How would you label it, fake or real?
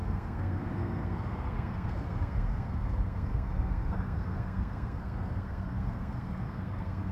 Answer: fake